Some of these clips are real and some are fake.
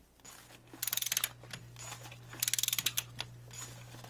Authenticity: real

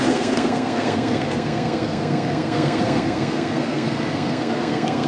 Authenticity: fake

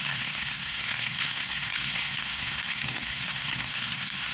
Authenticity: fake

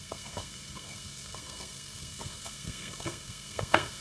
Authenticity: fake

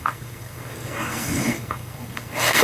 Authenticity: fake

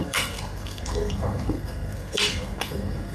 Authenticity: fake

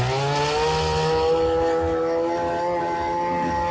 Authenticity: real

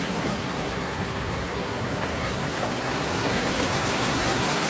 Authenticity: fake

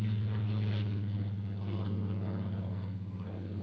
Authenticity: fake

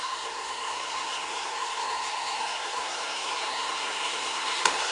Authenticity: fake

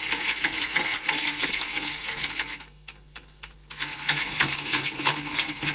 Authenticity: fake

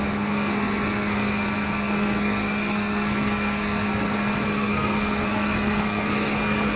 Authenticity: fake